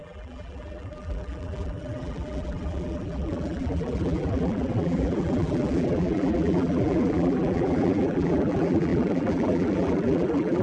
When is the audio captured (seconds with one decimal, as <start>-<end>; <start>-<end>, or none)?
none